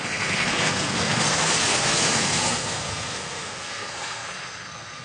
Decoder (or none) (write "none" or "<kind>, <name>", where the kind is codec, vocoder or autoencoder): codec, SNAC